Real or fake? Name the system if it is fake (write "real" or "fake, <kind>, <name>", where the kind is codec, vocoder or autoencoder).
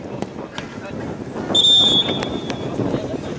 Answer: real